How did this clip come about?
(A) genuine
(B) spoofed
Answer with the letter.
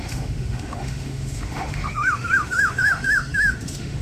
B